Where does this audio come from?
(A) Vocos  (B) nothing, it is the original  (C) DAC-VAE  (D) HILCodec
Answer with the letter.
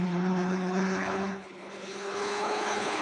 D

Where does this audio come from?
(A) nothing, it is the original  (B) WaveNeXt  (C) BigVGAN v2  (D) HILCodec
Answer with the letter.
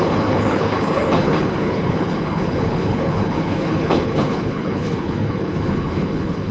D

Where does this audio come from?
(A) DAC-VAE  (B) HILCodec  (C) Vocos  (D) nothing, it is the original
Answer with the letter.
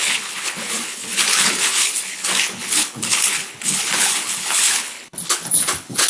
B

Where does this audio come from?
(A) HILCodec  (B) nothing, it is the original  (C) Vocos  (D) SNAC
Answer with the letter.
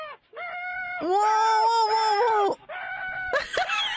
B